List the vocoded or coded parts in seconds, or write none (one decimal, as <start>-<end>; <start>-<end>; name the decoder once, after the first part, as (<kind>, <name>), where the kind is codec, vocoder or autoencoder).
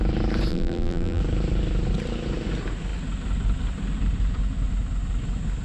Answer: 0.5-1.2 (vocoder, BigVGAN v2)